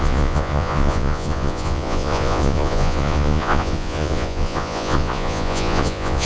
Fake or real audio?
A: fake